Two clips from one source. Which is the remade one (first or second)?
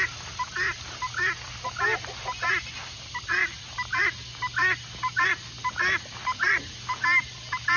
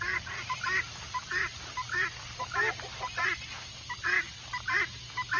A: second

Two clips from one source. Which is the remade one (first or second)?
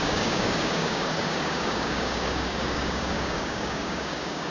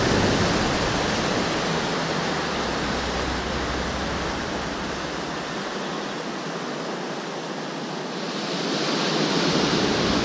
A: first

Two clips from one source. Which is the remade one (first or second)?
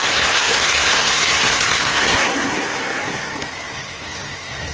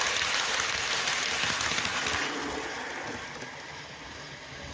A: first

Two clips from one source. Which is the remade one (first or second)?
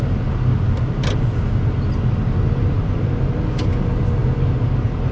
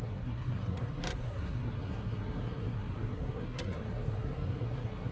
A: second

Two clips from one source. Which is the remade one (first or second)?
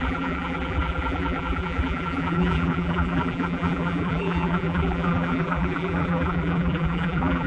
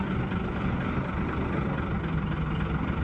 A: first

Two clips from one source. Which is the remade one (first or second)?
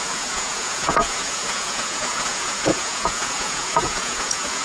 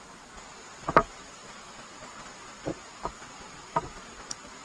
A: first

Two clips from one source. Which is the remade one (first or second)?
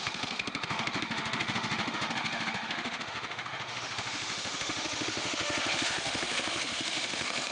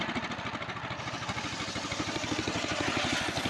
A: first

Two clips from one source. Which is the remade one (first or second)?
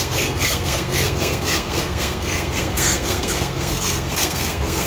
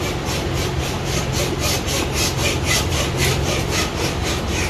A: first